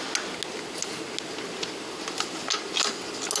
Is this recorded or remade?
recorded